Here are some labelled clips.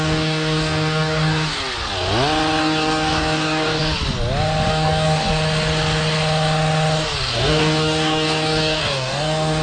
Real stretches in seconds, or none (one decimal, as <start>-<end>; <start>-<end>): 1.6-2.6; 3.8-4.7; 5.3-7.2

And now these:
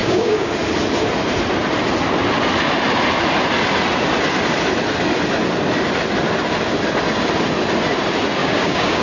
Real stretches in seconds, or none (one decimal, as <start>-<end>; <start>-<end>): 0.5-8.4

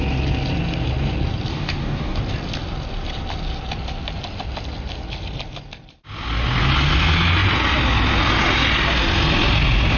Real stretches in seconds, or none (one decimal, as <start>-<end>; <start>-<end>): 0.0-1.5; 2.2-10.0

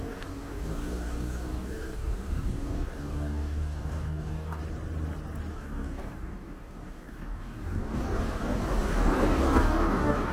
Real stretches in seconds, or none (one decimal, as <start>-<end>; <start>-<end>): 4.6-5.5

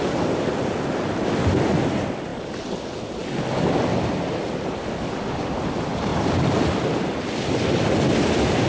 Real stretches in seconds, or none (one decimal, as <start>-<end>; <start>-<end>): 0.0-8.7

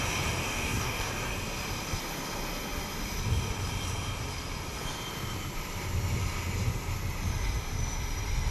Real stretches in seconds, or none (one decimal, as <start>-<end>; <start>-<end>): 0.0-0.4; 1.1-8.5